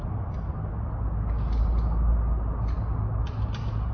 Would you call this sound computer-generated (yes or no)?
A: no